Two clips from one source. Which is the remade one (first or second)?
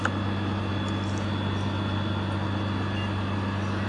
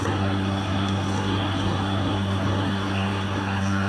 second